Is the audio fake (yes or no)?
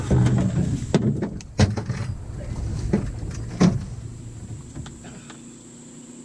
no